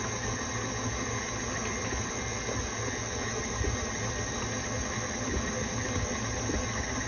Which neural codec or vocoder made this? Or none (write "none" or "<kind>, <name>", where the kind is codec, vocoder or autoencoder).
none